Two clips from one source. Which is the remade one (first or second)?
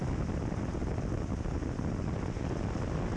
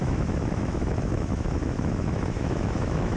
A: second